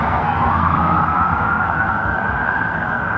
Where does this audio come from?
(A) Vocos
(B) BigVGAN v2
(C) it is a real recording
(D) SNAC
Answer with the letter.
D